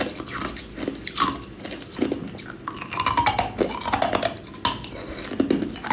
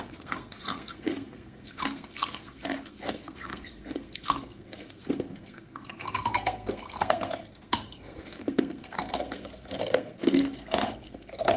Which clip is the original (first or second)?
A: first